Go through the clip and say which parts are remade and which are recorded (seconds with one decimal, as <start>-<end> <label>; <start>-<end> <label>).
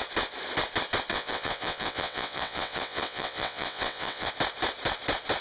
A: 0.0-1.1 recorded; 1.1-4.3 remade; 4.3-5.4 recorded